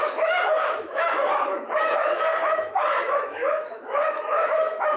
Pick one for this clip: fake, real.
fake